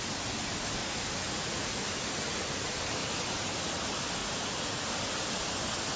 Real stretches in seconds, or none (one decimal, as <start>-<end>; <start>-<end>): 0.0-0.8; 1.8-4.2; 4.9-6.0